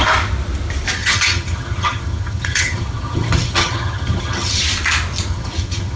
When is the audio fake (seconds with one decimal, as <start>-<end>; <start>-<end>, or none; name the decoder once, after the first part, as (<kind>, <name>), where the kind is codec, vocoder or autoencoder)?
1.0-4.6 (vocoder, HiFi-GAN); 5.3-6.0

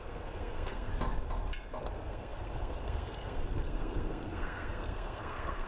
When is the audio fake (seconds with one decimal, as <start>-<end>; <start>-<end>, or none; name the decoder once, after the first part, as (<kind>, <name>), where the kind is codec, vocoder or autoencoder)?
0.0-0.9 (codec, SNAC); 1.8-5.7